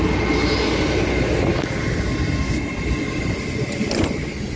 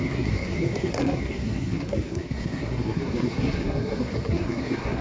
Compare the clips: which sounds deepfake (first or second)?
second